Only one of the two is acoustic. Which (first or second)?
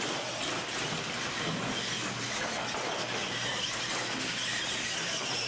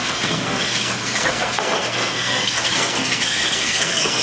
first